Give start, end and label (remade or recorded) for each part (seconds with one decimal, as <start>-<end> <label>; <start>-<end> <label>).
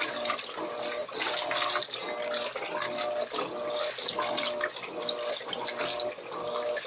0.0-6.9 recorded